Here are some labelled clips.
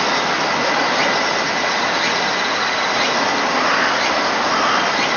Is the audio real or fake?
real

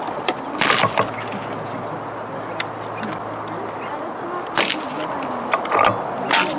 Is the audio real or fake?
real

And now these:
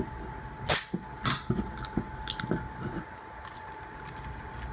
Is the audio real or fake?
real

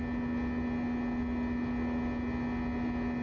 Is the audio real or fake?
real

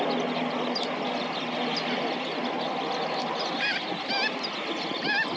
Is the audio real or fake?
real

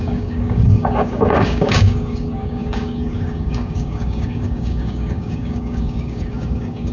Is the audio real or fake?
fake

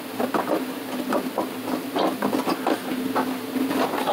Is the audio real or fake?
real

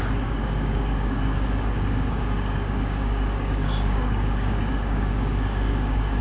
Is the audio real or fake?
fake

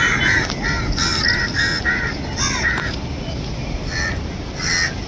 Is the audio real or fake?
real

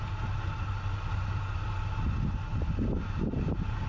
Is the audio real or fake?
real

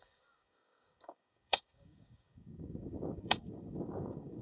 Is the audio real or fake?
fake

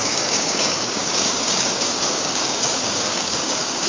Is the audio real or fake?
fake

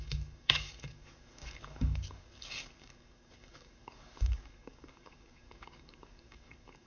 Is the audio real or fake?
fake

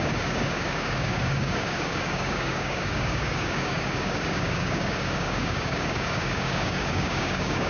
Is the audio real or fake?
fake